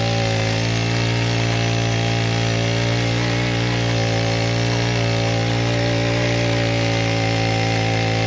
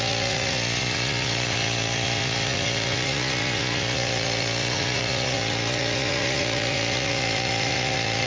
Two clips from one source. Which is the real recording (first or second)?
first